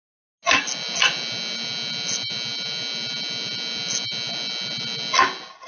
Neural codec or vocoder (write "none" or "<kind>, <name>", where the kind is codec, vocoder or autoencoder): none